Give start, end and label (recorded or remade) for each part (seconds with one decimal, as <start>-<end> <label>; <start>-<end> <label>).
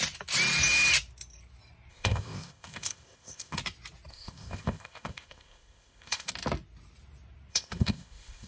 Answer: 0.0-1.9 recorded; 1.9-3.6 remade; 3.6-4.1 recorded; 4.1-6.3 remade; 6.3-7.5 recorded; 7.5-8.5 remade